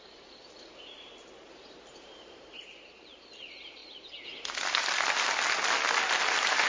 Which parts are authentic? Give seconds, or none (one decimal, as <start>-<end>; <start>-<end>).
3.8-6.7